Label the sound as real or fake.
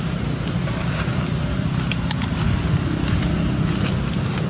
real